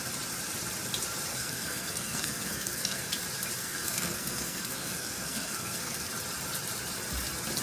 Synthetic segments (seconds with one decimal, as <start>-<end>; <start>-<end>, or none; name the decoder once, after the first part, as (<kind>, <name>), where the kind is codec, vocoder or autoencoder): 1.3-3.1 (codec, SNAC); 3.6-6.1